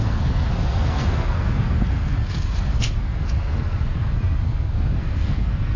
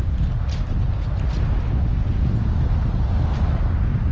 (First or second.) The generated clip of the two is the first